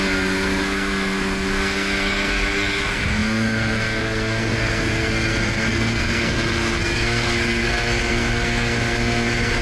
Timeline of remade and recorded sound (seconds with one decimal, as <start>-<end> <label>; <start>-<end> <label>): 0.0-9.6 remade